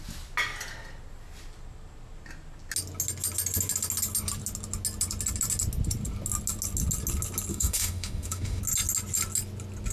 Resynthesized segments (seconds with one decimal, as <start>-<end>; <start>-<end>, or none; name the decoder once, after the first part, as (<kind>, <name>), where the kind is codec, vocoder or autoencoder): 7.5-8.6 (autoencoder, DAC-VAE)